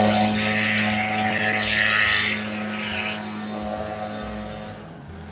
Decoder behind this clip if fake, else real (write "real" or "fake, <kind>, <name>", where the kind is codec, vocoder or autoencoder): real